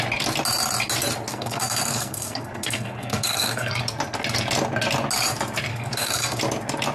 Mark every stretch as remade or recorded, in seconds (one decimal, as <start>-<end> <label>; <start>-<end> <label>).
0.0-1.3 recorded; 1.3-3.8 remade; 3.8-5.7 recorded; 5.7-6.4 remade; 6.4-6.9 recorded